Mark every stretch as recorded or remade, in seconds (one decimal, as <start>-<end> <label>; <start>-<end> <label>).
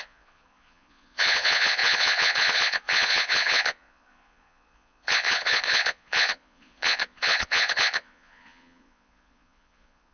0.0-10.1 remade